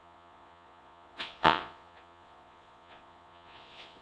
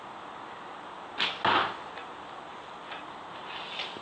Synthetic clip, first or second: first